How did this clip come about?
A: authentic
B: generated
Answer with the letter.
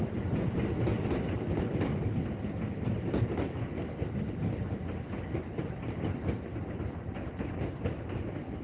A